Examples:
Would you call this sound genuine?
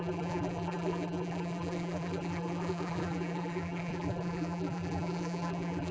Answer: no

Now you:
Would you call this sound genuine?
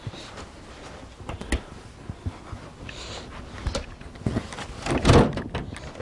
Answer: yes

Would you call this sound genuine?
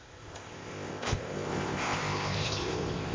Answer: no